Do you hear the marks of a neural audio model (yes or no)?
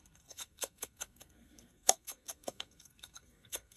yes